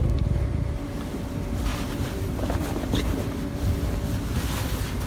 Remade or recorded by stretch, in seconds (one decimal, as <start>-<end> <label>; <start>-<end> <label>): 0.0-5.1 recorded